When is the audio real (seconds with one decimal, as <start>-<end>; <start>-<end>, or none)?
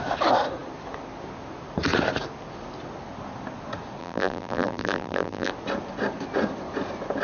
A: 0.0-4.0; 5.5-7.2